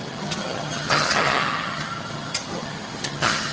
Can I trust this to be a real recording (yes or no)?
no